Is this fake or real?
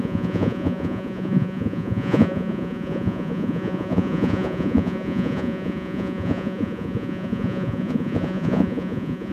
fake